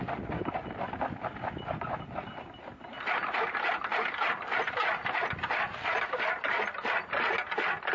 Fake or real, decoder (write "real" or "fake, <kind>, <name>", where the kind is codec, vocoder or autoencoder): real